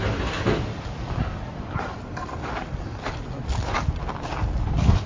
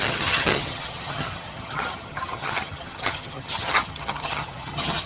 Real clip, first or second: first